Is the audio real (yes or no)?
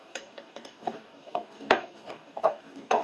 no